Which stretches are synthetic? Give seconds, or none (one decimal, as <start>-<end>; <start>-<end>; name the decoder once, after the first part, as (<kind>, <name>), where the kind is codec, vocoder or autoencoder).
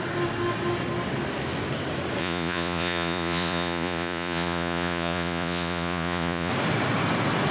2.2-6.5 (vocoder, Vocos)